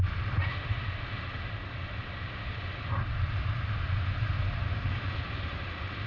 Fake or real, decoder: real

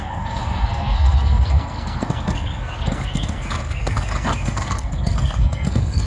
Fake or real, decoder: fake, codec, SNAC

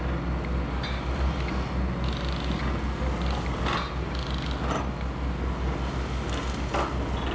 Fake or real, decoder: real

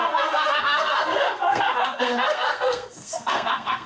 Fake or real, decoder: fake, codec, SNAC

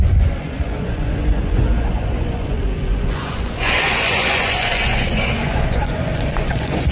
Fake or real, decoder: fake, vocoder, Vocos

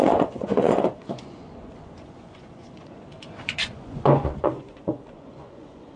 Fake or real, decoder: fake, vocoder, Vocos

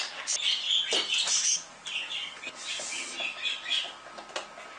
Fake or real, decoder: real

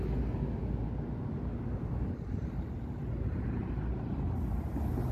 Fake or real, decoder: real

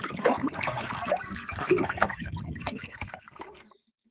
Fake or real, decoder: fake, codec, SNAC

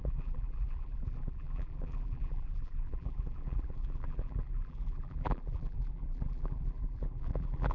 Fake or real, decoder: fake, vocoder, BigVGAN v2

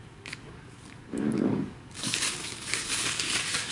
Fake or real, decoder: fake, codec, DAC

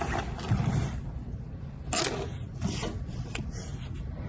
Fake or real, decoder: real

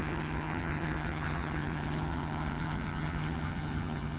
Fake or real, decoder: fake, vocoder, HiFi-GAN